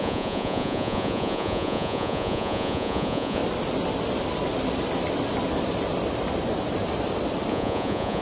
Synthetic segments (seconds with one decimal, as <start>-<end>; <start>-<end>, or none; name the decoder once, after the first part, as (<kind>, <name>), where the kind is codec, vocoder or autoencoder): 0.0-3.4 (vocoder, Vocos); 7.5-8.2